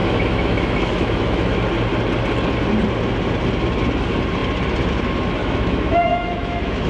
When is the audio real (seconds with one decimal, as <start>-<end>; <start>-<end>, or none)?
1.6-5.4